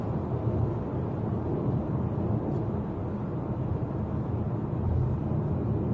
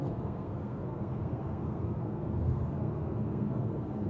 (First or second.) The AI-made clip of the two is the second